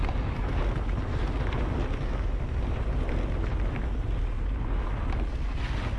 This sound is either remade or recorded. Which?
recorded